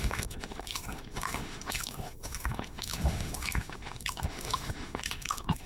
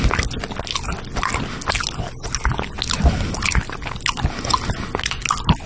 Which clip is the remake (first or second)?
first